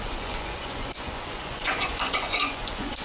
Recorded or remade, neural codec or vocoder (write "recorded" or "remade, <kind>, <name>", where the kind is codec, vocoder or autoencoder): remade, vocoder, Vocos